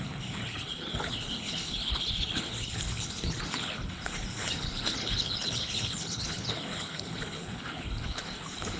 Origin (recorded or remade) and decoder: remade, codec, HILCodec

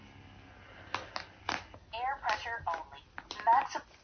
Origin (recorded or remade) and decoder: recorded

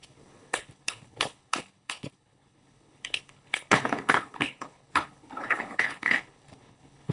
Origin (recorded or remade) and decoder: remade, codec, HILCodec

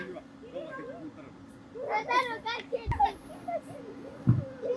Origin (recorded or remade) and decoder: recorded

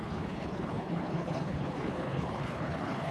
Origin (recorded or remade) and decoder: remade, codec, HILCodec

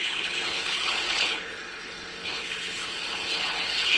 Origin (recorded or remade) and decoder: remade, codec, HILCodec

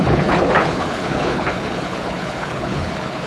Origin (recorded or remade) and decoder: remade, codec, HILCodec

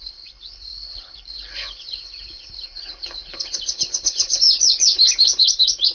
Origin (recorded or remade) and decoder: remade, codec, HILCodec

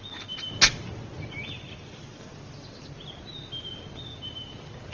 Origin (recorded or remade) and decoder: recorded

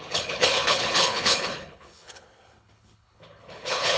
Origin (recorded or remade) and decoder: remade, codec, HILCodec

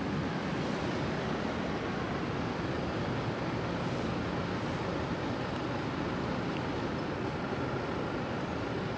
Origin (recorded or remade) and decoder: recorded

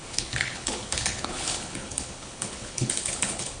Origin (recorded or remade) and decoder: remade, codec, HILCodec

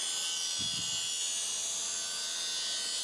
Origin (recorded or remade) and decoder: recorded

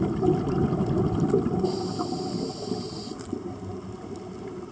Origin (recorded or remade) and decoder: recorded